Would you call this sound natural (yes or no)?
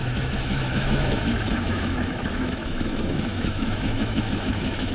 no